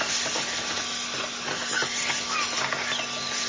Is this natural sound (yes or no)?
yes